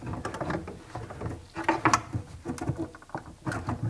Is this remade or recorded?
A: recorded